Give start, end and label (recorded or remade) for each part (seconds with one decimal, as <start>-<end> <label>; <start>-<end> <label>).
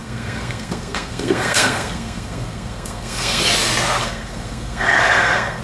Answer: 0.0-3.4 remade; 3.4-4.0 recorded; 4.0-5.6 remade